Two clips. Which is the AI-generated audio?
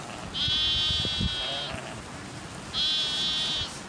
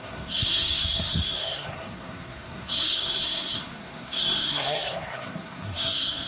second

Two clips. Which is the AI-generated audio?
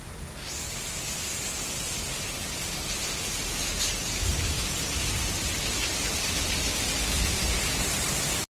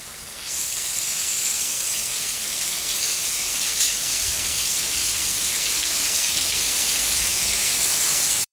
second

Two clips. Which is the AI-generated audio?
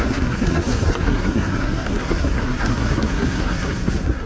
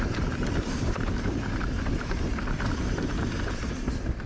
first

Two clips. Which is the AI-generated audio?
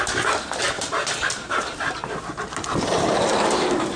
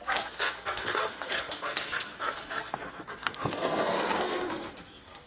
second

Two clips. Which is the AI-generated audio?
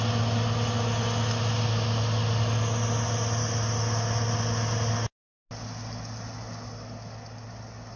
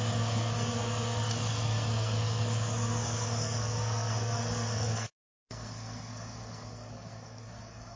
second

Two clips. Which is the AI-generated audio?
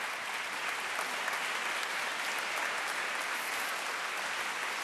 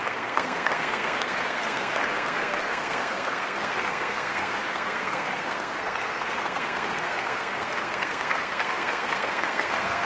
second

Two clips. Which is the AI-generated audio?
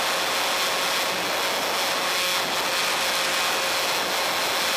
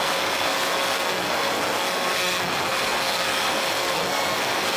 second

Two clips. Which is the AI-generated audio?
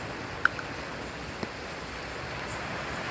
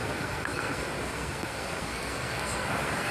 second